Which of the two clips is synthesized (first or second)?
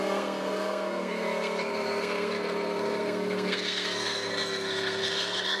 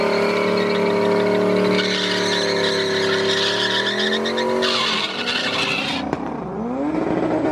first